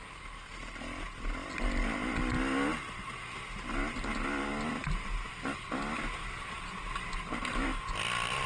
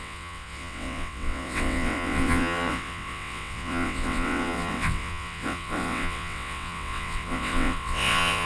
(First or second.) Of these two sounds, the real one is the first